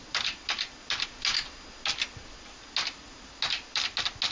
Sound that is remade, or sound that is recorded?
recorded